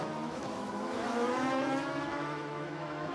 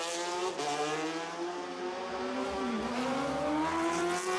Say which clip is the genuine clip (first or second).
second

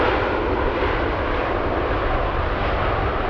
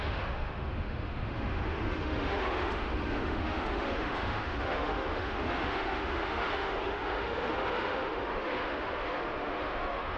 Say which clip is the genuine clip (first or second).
first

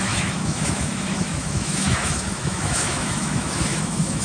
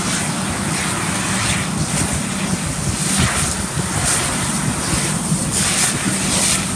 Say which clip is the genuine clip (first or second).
second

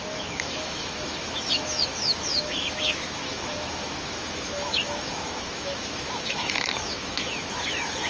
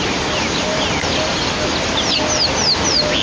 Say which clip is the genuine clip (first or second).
second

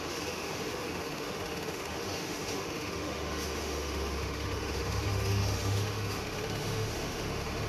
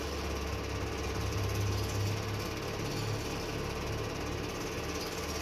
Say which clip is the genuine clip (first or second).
second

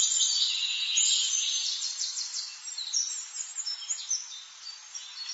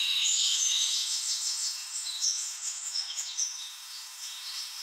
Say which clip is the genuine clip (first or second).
first